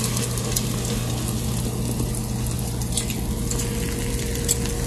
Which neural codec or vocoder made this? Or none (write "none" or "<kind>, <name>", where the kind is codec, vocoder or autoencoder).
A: none